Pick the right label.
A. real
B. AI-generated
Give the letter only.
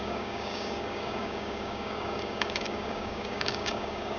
B